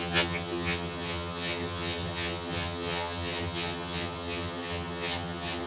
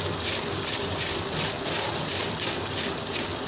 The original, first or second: second